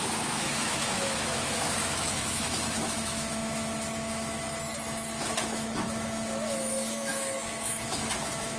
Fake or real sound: fake